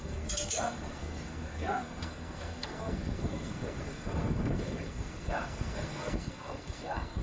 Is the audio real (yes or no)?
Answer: no